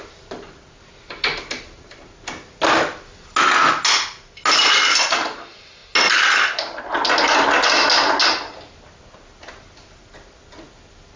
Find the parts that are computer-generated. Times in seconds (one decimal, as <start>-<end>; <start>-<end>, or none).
none